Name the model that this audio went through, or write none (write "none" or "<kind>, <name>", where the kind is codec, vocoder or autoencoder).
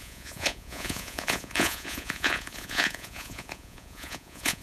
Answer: vocoder, Vocos